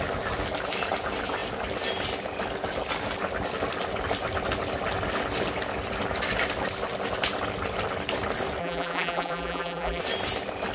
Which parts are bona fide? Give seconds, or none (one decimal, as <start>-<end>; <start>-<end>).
0.0-8.6; 10.0-10.7